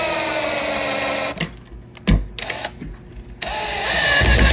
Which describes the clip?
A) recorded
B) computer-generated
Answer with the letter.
A